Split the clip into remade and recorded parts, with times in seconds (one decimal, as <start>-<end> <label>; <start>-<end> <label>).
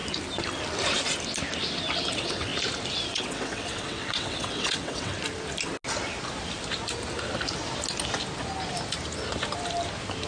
0.0-2.1 recorded; 2.1-2.5 remade; 2.5-3.1 recorded; 3.1-5.1 remade; 5.1-10.3 recorded